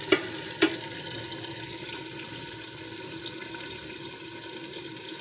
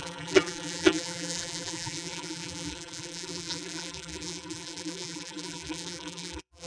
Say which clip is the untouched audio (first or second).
first